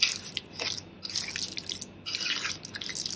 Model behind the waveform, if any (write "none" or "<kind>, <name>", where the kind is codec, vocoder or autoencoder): none